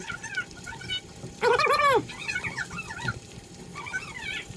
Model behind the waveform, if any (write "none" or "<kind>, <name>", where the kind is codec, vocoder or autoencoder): none